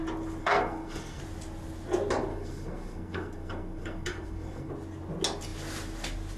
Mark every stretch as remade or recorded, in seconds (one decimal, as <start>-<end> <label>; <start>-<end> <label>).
0.0-0.4 recorded; 0.4-1.2 remade; 1.2-2.3 recorded; 2.3-4.7 remade; 4.7-6.4 recorded